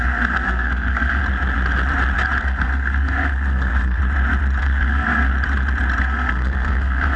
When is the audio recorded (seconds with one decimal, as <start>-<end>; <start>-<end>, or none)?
1.2-2.4; 4.0-4.6; 5.3-6.0